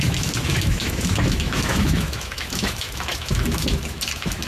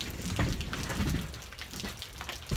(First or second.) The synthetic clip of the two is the first